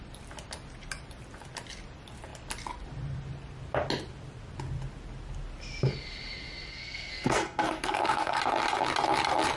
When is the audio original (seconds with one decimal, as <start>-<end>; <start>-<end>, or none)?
0.0-6.7; 8.4-9.6